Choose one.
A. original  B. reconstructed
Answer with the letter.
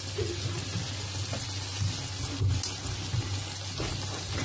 A